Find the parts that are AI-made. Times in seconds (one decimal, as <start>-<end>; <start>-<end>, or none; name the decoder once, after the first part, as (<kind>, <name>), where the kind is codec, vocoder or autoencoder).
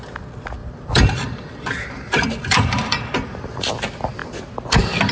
0.6-3.7 (vocoder, BigVGAN v2)